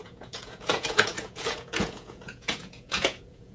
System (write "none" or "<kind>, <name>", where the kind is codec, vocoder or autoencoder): vocoder, Vocos